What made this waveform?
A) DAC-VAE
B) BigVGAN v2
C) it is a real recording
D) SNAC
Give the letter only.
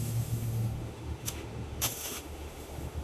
A